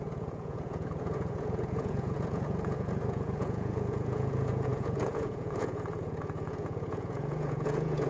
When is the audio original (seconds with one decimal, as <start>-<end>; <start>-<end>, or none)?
none